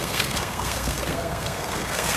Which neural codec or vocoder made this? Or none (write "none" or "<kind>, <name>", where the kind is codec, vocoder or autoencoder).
codec, SNAC